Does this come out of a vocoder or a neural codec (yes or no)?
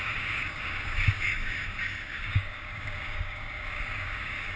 yes